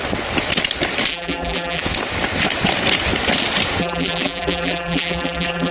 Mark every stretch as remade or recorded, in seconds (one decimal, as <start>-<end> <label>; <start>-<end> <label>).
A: 0.0-1.1 recorded; 1.1-1.8 remade; 1.8-3.8 recorded; 3.8-5.7 remade